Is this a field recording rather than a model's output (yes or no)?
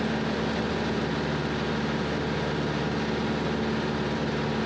yes